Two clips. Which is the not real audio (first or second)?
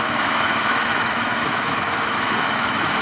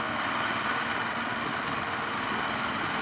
first